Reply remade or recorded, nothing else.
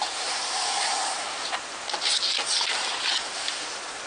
recorded